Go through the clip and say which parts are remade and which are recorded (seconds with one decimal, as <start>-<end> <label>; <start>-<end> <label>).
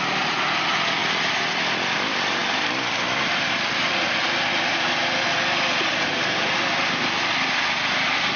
0.0-8.4 recorded